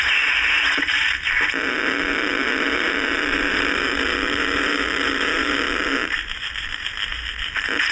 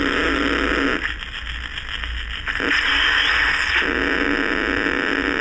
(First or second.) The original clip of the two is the second